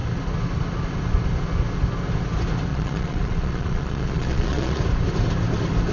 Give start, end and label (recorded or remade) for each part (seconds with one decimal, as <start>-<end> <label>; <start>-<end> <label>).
0.0-2.7 recorded; 2.7-4.8 remade; 4.8-5.9 recorded